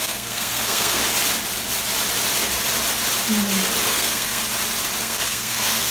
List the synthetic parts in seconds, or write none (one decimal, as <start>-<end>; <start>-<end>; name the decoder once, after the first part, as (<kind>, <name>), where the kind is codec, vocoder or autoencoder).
0.0-1.0 (codec, SNAC); 3.9-4.4; 5.0-5.9